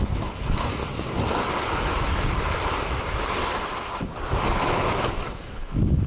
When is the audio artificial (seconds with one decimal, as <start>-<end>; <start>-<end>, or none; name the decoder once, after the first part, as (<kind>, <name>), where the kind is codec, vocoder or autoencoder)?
0.0-0.8 (autoencoder, DAC-VAE); 4.5-6.1